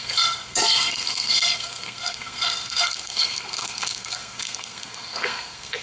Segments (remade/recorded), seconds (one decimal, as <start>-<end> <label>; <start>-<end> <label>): 0.0-5.8 remade